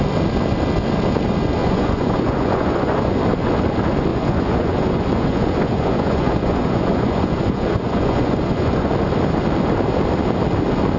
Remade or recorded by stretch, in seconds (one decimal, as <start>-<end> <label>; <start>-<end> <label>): 0.0-1.6 recorded; 1.6-3.2 remade; 3.2-4.1 recorded; 4.1-8.9 remade; 8.9-11.0 recorded